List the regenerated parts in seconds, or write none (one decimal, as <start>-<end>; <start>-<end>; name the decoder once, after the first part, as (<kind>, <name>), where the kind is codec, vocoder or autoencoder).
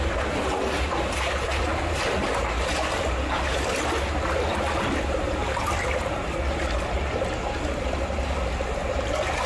none